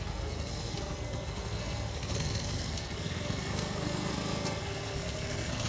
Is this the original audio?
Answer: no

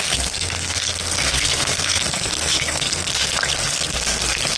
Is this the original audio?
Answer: no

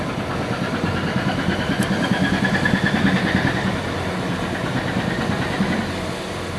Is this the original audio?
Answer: yes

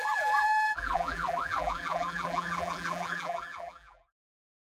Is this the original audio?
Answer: no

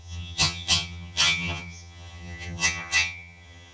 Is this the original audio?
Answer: no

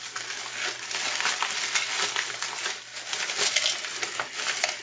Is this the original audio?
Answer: yes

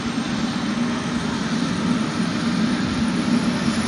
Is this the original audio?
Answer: yes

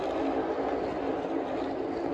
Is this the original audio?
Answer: yes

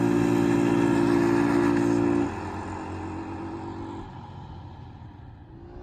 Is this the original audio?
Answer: yes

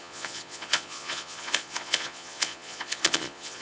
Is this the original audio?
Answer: no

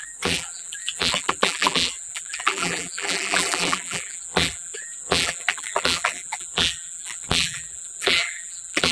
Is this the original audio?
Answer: no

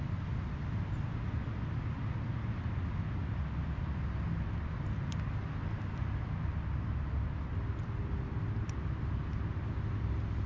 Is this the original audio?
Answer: yes